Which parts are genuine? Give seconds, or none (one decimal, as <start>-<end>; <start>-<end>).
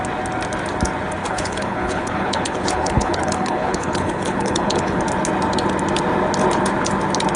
0.0-1.2; 5.0-7.4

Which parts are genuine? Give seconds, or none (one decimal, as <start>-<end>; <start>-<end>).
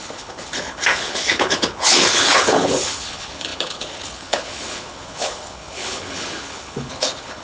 none